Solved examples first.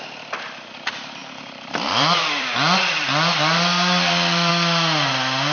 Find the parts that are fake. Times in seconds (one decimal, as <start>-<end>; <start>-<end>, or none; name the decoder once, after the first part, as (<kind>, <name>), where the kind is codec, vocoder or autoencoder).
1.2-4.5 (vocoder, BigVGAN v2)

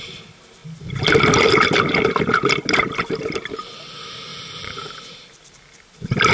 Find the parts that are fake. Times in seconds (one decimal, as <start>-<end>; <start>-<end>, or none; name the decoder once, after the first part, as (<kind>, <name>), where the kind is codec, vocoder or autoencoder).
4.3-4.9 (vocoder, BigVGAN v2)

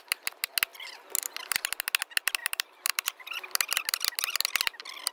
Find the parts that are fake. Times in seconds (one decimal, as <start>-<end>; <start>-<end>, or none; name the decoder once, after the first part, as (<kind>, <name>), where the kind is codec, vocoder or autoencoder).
2.4-3.4 (vocoder, BigVGAN v2)

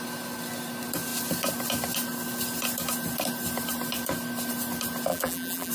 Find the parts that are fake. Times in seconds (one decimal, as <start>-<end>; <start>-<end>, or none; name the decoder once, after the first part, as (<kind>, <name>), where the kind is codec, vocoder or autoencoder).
5.1-5.7 (vocoder, BigVGAN v2)

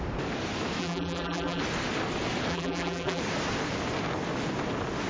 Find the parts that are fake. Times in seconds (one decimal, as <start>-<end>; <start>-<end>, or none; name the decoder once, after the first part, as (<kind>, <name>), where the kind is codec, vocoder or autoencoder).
0.8-1.6 (vocoder, BigVGAN v2); 2.5-3.2